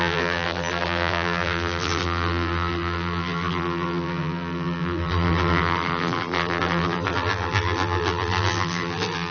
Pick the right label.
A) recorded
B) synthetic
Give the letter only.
B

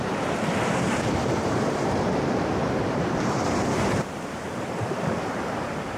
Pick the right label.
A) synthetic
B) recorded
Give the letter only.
A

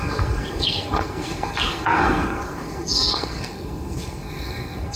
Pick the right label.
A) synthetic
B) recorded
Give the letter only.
A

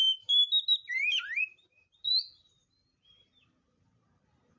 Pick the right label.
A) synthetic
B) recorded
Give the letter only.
A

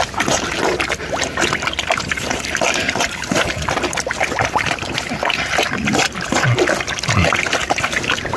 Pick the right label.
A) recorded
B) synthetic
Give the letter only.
B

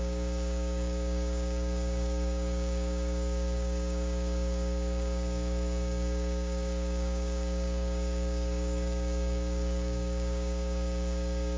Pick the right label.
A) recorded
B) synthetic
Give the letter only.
B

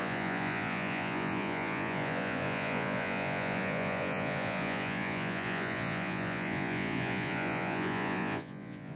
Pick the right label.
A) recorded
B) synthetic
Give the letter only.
B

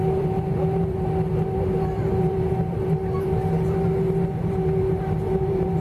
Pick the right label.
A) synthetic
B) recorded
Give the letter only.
A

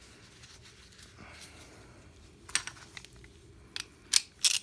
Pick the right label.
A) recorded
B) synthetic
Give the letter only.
A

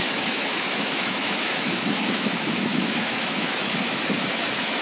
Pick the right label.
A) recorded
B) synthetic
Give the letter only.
B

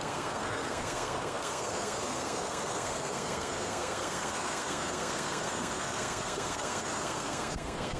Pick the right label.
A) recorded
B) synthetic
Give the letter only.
B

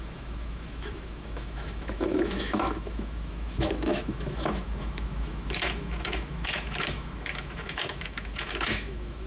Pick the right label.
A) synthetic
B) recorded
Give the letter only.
A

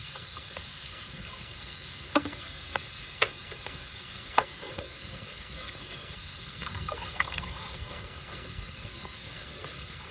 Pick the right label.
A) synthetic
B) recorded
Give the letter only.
A